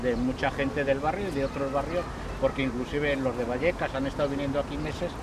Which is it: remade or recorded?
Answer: recorded